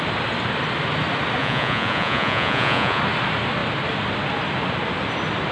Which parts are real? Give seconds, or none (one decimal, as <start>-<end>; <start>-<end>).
0.0-1.4; 3.0-5.5